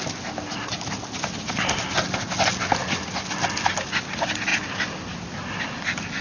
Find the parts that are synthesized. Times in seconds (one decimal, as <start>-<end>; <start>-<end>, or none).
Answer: none